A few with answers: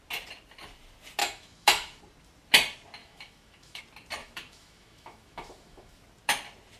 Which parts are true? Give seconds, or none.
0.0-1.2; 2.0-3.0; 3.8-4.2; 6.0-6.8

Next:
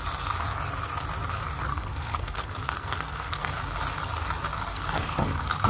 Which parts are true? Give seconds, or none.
0.0-1.7; 3.5-4.7